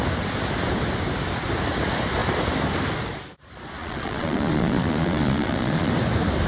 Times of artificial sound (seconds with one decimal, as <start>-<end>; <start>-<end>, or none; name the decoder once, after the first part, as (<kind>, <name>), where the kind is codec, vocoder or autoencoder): 3.8-5.9 (vocoder, Vocos)